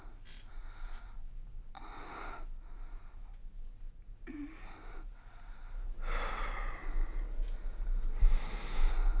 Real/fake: real